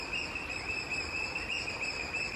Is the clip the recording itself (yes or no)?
no